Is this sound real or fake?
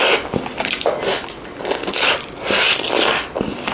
real